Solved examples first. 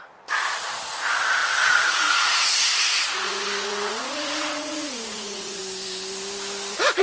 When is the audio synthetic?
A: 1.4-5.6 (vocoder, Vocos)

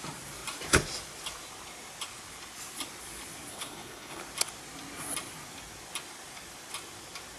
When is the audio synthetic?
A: 3.5-4.2 (codec, HILCodec)

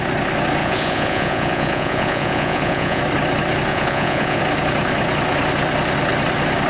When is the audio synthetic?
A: 0.6-3.0 (vocoder, Vocos); 3.7-4.4

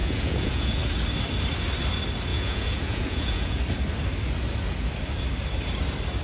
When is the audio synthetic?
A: 0.0-0.8 (vocoder, Vocos); 2.3-3.6

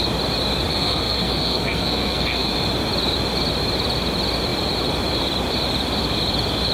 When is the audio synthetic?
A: 0.7-2.5 (codec, SNAC)

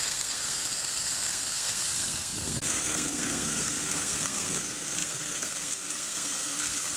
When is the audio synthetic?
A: 0.0-7.0 (codec, SNAC)